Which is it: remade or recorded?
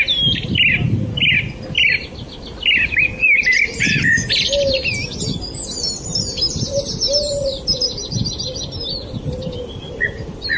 recorded